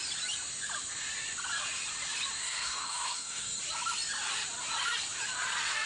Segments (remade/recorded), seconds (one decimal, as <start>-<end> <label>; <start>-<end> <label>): 0.0-2.4 recorded; 2.4-3.6 remade; 3.6-5.9 recorded